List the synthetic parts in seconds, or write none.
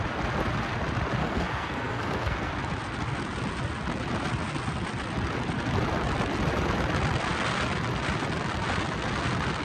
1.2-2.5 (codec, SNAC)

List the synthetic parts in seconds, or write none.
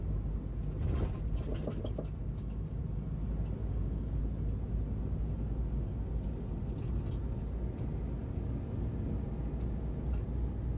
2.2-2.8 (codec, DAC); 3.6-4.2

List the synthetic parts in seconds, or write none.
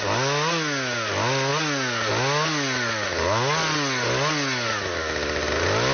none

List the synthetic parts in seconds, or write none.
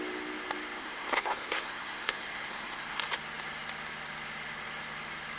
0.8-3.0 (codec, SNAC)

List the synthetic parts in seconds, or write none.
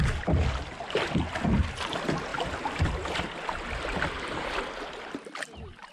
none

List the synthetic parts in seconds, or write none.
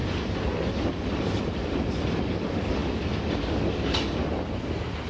0.0-1.4 (vocoder, BigVGAN v2)